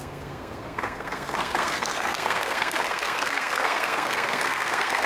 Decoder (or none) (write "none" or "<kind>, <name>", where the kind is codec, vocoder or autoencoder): codec, SNAC